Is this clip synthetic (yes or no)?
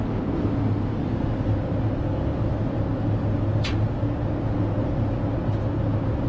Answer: no